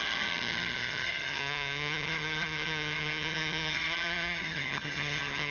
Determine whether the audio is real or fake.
fake